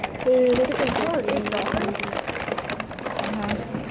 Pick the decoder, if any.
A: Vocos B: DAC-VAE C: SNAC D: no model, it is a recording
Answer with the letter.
D